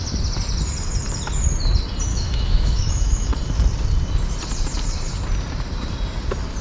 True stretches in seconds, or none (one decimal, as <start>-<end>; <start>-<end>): 0.0-2.1; 3.3-6.6